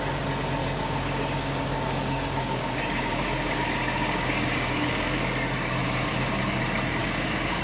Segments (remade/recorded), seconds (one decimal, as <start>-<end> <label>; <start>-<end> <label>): 0.0-0.6 recorded; 0.6-5.2 remade; 5.2-5.8 recorded; 5.8-6.6 remade; 6.6-7.0 recorded; 7.0-7.6 remade